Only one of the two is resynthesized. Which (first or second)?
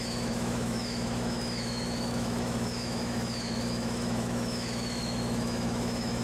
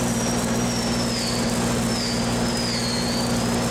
first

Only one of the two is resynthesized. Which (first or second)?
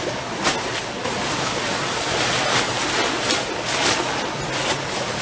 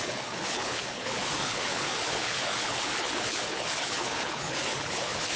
second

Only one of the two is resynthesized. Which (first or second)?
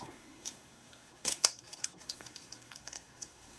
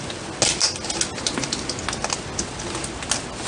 first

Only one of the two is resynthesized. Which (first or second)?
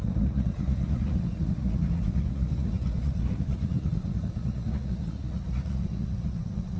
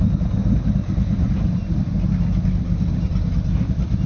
first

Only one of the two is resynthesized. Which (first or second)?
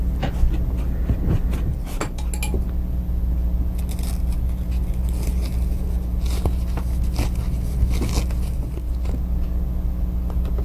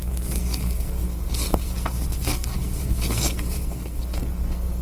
second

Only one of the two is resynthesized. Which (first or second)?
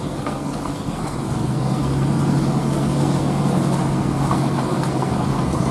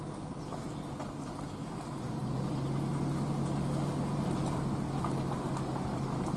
first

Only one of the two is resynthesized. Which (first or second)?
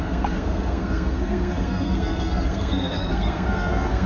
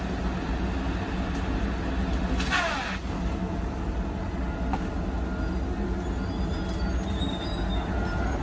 first